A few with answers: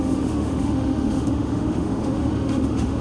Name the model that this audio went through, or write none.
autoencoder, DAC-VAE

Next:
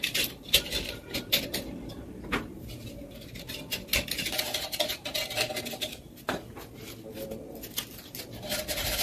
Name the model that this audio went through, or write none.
none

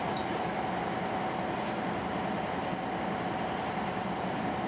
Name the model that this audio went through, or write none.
none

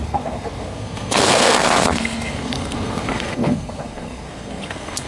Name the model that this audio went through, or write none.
codec, SNAC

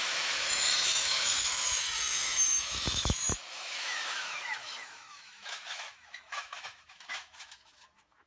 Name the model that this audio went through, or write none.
autoencoder, DAC-VAE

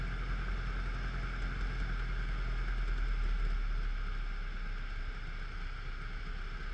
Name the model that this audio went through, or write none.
none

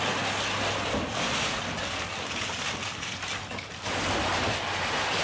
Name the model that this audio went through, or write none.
none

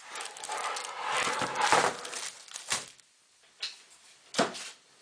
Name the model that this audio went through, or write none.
none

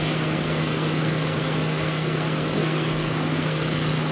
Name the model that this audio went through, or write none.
codec, SNAC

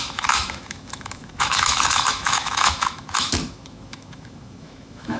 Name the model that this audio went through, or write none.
autoencoder, DAC-VAE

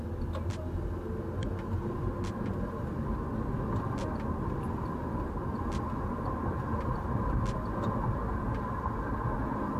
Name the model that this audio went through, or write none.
none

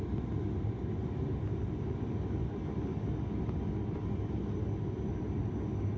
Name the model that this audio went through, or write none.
none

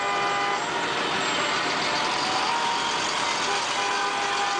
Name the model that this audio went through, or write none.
none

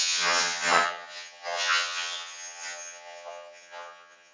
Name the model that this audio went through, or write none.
vocoder, HiFi-GAN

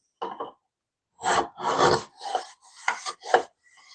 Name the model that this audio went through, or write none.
none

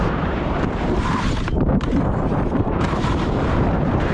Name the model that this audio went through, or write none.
vocoder, BigVGAN v2